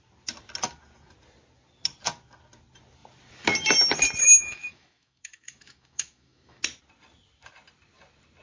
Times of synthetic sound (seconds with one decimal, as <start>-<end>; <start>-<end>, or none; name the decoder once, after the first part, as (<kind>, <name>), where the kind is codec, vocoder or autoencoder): 4.2-6.6 (autoencoder, DAC-VAE)